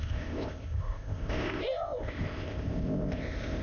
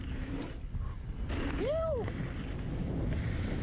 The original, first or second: second